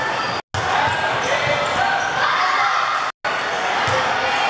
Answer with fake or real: real